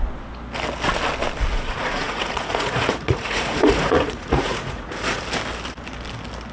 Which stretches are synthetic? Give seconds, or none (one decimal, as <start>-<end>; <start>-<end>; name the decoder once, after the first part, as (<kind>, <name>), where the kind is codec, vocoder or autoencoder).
1.5-5.2 (vocoder, Vocos)